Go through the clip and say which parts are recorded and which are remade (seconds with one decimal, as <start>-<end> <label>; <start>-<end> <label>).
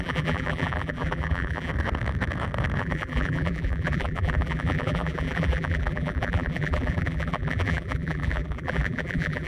0.0-1.7 remade; 1.7-2.8 recorded; 2.8-9.5 remade